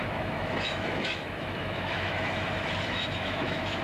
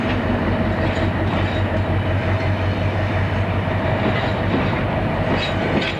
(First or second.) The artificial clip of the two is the first